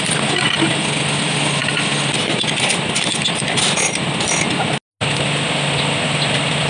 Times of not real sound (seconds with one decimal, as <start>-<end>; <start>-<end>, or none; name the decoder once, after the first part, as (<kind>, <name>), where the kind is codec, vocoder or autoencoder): none